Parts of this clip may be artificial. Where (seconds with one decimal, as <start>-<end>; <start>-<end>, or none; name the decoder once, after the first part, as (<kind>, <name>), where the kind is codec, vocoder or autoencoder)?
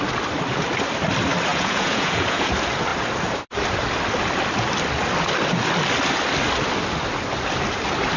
1.5-2.5 (vocoder, Vocos)